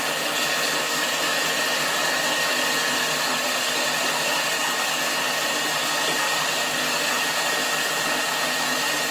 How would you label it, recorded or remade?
recorded